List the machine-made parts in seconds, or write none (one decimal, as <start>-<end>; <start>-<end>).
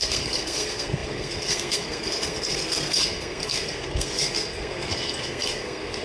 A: 0.0-6.0